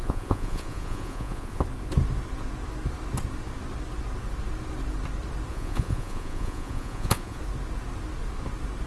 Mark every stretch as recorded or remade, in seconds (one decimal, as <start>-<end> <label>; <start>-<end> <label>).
0.0-1.6 remade; 1.6-5.5 recorded; 5.5-7.4 remade; 7.4-8.9 recorded